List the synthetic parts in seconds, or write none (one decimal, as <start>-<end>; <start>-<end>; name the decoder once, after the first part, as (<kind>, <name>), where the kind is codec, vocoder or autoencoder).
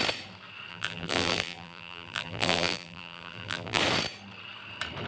0.7-3.8 (vocoder, BigVGAN v2)